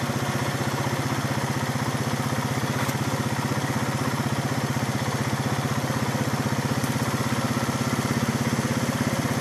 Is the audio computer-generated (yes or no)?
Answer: no